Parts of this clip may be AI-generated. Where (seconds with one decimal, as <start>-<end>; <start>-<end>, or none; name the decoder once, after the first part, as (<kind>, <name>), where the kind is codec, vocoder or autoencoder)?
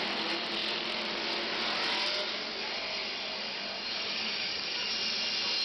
3.9-4.9 (codec, DAC)